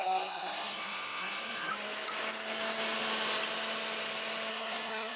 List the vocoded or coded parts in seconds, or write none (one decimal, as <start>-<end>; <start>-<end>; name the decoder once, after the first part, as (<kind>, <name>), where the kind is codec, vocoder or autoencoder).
0.0-1.7 (codec, SNAC); 4.5-5.2